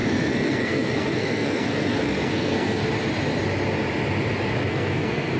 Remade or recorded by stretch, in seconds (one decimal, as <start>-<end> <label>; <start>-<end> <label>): 0.0-2.8 remade; 2.8-4.7 recorded; 4.7-5.4 remade